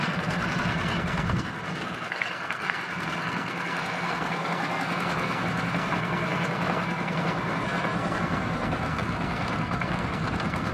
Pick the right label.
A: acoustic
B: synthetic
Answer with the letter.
B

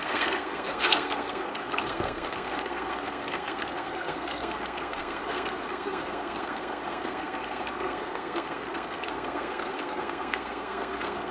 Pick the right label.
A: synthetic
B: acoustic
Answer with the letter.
A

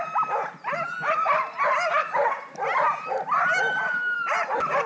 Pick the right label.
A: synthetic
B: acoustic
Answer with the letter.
B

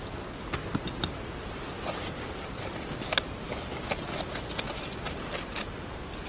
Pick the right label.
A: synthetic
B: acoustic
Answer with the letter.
B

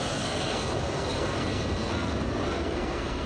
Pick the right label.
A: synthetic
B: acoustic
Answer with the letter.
A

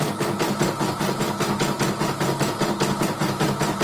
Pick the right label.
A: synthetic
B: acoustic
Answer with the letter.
B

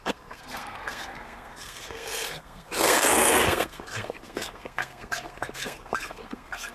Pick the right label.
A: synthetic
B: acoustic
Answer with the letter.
A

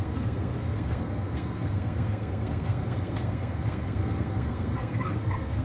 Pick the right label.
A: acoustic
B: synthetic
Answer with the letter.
B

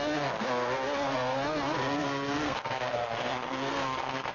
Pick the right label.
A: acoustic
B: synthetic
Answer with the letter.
B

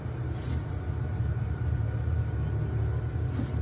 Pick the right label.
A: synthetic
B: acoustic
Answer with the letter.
B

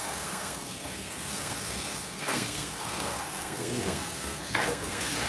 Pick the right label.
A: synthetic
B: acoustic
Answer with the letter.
A